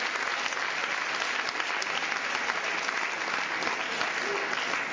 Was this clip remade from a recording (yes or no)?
no